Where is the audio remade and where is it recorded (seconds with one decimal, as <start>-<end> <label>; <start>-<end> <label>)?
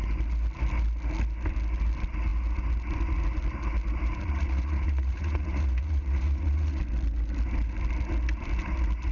0.0-4.2 recorded; 4.2-6.8 remade; 6.8-9.1 recorded